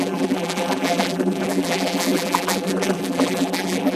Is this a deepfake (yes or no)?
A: yes